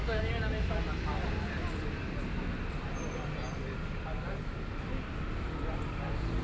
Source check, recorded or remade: recorded